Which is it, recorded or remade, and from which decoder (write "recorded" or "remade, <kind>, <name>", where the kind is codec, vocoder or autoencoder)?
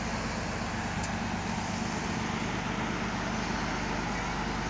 recorded